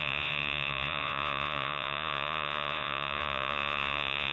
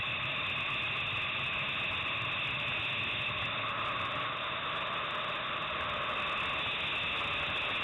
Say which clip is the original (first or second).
second